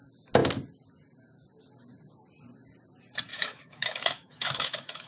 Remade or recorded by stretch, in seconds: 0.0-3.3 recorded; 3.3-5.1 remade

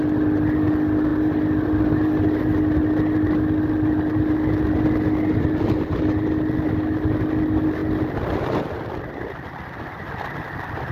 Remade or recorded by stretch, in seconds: 0.0-10.9 recorded